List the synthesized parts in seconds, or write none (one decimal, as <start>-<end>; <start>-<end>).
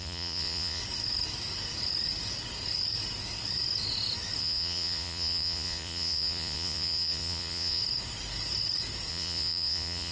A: 0.0-0.8; 4.4-7.8; 9.1-10.1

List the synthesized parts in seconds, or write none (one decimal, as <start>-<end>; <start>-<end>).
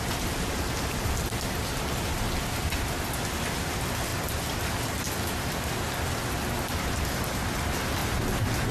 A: 8.0-8.7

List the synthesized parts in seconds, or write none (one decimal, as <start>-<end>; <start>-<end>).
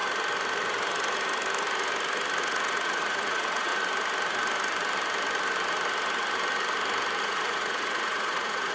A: 2.4-3.7; 7.2-8.7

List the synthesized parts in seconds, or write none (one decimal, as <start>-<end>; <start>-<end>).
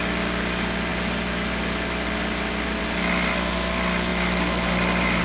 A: none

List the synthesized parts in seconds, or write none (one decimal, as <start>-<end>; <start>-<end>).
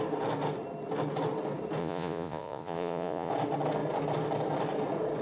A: 1.8-3.3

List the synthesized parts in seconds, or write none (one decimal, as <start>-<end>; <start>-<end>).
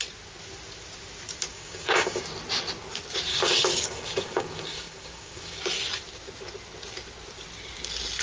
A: 1.5-2.2; 3.3-5.6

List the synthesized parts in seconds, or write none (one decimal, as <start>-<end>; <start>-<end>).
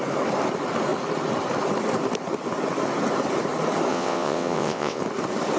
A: 3.9-5.0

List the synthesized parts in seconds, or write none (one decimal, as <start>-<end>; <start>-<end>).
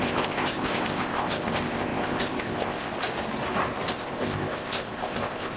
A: 0.0-2.9; 3.9-5.6